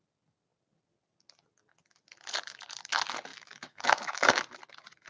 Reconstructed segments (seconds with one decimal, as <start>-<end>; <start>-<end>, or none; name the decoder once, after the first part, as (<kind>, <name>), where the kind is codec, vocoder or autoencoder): 3.3-4.4 (autoencoder, DAC-VAE)